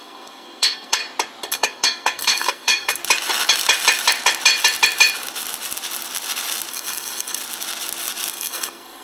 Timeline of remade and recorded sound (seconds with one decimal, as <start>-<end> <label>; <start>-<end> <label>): 0.0-1.0 remade; 1.0-1.5 recorded; 1.5-3.0 remade; 3.0-6.7 recorded; 6.7-7.4 remade; 7.4-8.3 recorded; 8.3-9.0 remade